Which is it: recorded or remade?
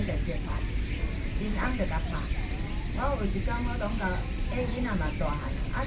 recorded